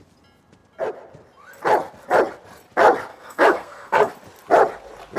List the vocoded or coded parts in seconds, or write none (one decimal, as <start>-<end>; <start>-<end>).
3.1-4.1